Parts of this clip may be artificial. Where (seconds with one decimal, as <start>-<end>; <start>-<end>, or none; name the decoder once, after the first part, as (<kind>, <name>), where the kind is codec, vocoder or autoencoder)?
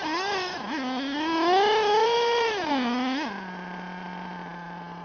2.0-2.7 (vocoder, BigVGAN v2)